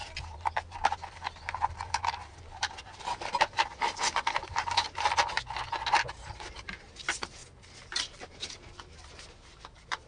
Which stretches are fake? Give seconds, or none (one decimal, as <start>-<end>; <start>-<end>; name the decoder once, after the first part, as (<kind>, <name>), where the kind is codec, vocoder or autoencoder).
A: 0.0-7.4 (vocoder, BigVGAN v2); 8.2-10.1